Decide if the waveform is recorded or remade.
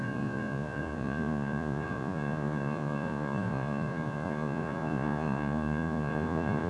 remade